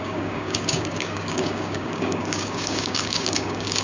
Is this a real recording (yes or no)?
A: no